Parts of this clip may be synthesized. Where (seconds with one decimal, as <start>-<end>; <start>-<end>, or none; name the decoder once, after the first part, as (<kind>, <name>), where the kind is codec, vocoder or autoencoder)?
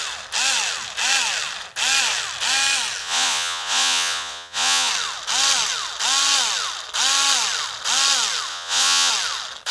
3.0-4.9 (vocoder, Vocos); 8.5-9.1